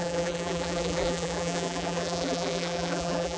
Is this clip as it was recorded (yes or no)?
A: no